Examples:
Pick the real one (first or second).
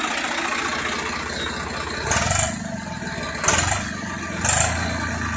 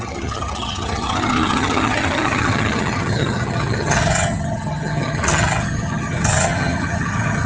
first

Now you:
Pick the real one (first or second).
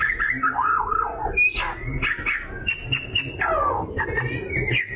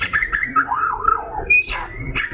first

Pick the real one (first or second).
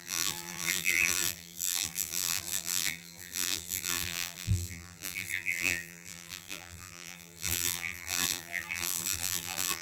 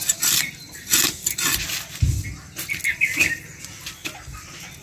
second